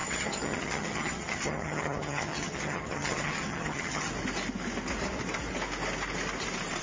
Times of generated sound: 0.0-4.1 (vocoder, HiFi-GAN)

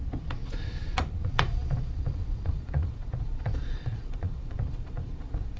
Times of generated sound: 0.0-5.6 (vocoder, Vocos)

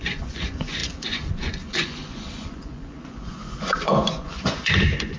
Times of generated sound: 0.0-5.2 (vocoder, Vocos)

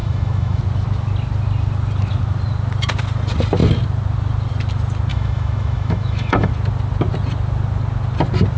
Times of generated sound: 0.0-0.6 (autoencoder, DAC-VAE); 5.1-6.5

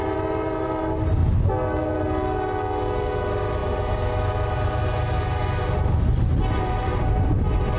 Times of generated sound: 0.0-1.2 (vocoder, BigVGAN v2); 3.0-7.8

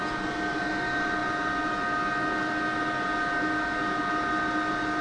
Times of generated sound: none

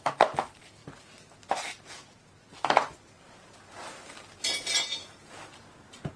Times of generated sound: none